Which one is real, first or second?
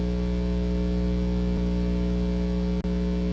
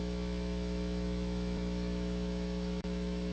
first